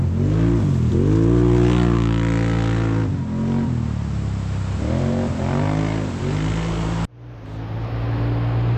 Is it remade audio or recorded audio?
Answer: recorded